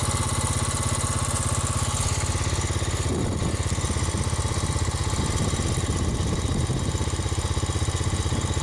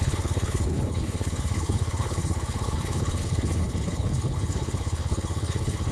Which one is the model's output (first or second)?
second